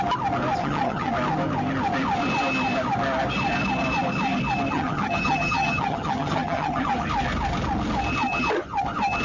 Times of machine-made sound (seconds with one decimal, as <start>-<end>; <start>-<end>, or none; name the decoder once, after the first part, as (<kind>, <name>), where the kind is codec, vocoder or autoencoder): 0.6-1.1 (vocoder, HiFi-GAN); 4.7-6.9